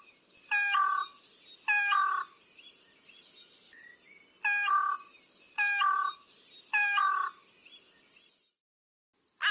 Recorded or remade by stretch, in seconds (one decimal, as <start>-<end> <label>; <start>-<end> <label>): 0.0-9.5 recorded